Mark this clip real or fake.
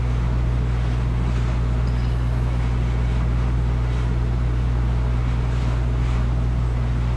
real